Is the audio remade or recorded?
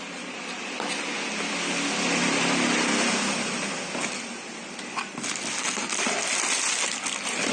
recorded